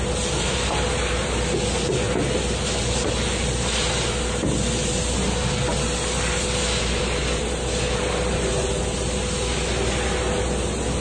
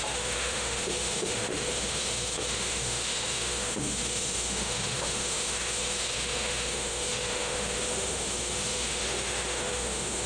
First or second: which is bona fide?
first